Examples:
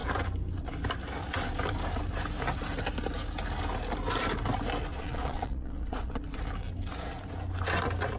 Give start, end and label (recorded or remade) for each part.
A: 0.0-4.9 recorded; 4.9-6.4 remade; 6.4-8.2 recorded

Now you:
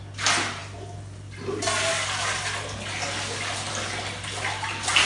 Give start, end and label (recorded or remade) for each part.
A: 0.0-5.1 recorded

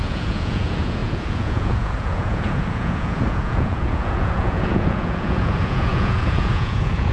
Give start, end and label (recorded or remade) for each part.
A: 0.0-7.1 remade

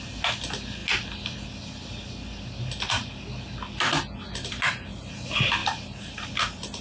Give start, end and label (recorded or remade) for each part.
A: 0.0-5.6 recorded; 5.6-6.3 remade; 6.3-6.8 recorded

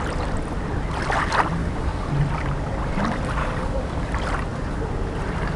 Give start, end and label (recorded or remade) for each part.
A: 0.0-1.6 recorded; 1.6-2.1 remade; 2.1-3.4 recorded; 3.4-4.1 remade; 4.1-5.6 recorded